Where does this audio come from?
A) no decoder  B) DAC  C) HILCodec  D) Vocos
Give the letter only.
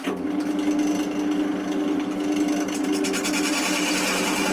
A